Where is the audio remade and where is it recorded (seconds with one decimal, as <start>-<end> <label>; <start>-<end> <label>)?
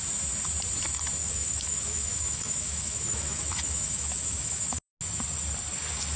0.0-1.2 recorded; 1.2-4.9 remade; 4.9-6.2 recorded